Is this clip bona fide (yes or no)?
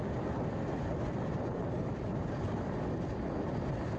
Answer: yes